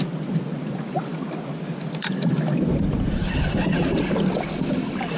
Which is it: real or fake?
real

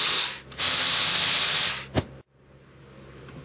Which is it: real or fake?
real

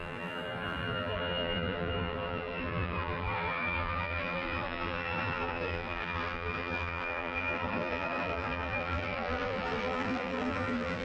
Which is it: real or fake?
fake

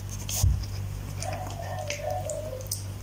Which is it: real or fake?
real